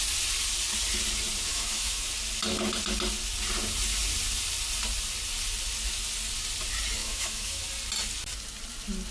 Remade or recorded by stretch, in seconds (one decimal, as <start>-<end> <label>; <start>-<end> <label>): 0.0-1.5 recorded; 1.5-2.1 remade; 2.1-7.0 recorded; 7.0-7.6 remade; 7.6-9.1 recorded